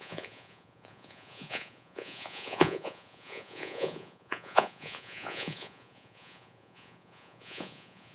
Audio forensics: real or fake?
fake